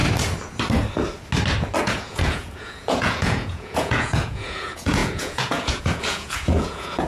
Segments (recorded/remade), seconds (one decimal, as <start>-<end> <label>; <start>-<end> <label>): 0.0-1.8 recorded; 1.8-7.1 remade